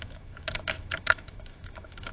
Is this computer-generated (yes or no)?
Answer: yes